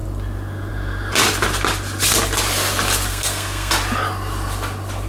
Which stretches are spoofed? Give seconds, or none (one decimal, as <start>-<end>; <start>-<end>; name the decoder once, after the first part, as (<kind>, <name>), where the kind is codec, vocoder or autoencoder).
3.1-3.7 (codec, SNAC)